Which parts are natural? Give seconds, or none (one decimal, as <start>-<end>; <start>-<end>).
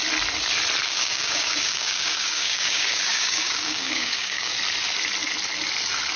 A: 0.0-0.8; 4.5-6.2